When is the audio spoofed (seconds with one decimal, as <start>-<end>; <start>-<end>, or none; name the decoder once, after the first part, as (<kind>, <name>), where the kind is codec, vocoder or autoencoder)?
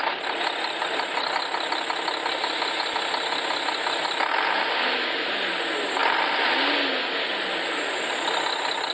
none